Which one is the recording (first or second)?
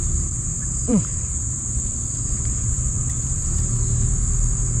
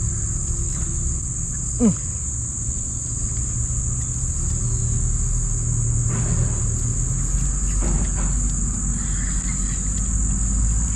second